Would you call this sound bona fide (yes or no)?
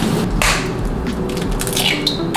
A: yes